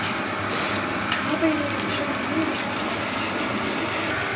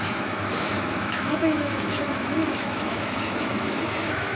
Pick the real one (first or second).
first